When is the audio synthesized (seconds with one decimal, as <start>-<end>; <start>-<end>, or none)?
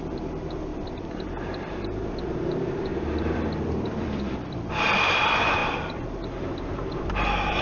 0.0-7.6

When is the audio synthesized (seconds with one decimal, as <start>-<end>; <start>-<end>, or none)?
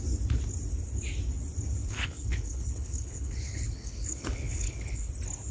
1.8-5.1